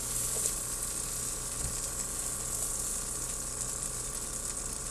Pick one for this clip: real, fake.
real